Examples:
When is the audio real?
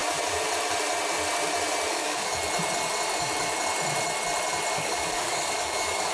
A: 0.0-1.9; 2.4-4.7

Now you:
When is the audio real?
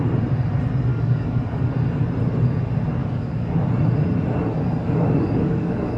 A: 0.0-0.9; 1.7-3.0; 3.7-4.8